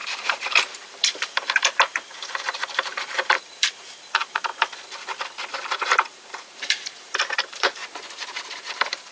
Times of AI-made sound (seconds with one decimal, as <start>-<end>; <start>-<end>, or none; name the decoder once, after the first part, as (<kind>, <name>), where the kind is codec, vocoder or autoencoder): 0.0-4.5 (vocoder, BigVGAN v2); 5.5-7.8; 8.5-9.1